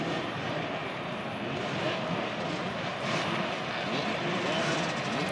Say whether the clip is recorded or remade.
recorded